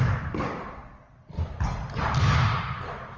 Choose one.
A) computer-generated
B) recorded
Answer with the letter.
B